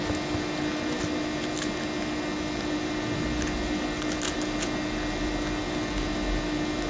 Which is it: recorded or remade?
recorded